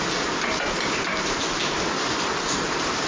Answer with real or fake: real